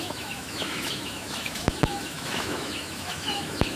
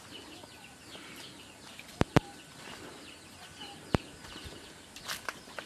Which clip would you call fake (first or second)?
first